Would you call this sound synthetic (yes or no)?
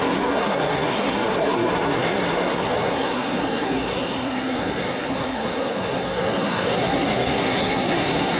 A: yes